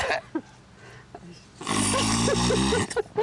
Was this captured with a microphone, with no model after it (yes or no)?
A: yes